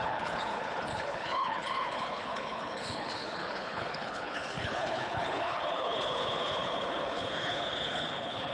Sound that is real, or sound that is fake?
fake